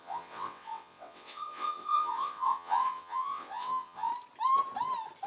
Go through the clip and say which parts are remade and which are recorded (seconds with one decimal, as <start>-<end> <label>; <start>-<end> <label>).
0.0-4.1 remade; 4.1-5.3 recorded